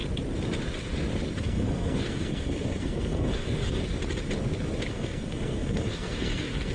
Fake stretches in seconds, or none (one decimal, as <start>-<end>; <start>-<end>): 1.4-3.8; 4.9-6.7